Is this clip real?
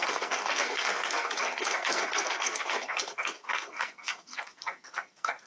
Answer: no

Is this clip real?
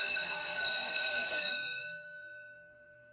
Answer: no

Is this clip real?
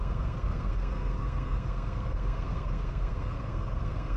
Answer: no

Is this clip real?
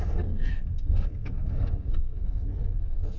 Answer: no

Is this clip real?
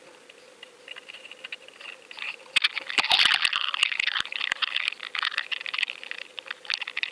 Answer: yes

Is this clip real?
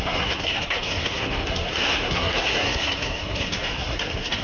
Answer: no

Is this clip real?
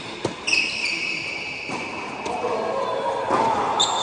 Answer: yes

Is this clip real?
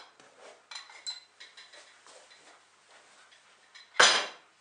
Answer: yes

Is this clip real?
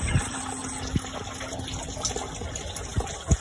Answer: yes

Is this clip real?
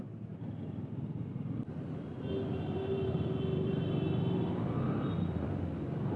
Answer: yes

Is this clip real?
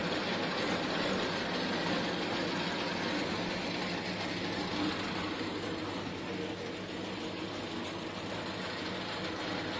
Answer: yes